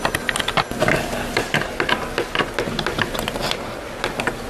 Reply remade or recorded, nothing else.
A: recorded